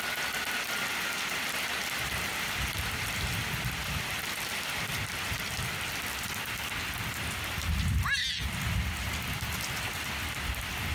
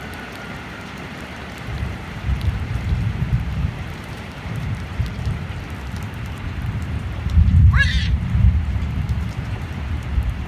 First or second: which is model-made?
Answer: second